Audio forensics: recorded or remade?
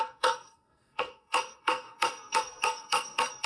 remade